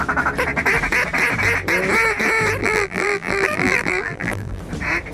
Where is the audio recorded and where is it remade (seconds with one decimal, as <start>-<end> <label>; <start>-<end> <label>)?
0.0-2.6 recorded; 2.6-4.6 remade; 4.6-5.1 recorded